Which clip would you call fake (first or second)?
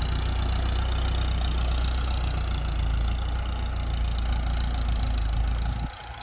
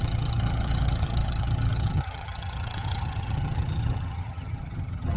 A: second